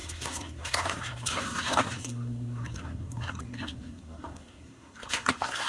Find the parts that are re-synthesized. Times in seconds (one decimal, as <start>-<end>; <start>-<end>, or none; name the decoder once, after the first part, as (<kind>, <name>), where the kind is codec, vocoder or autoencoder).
0.0-5.7 (codec, SNAC)